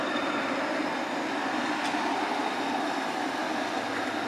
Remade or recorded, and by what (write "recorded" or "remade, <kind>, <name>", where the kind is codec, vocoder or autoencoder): recorded